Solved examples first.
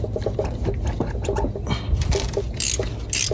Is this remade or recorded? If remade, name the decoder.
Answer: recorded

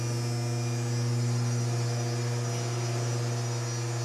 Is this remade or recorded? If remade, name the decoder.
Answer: recorded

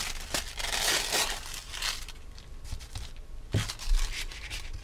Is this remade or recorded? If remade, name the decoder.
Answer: recorded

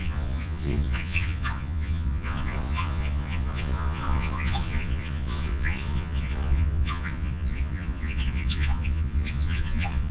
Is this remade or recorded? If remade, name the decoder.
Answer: remade, vocoder, Vocos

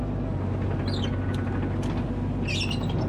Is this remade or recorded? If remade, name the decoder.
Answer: recorded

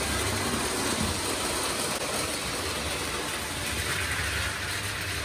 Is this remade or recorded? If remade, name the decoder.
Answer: recorded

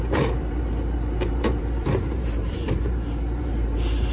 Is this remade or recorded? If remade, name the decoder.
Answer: remade, vocoder, BigVGAN v2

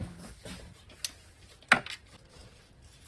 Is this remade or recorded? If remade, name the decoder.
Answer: recorded